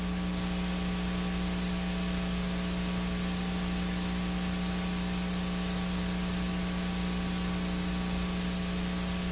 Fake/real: real